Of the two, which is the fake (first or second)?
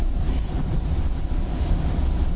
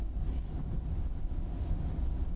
first